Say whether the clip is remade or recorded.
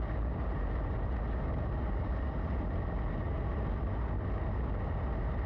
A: recorded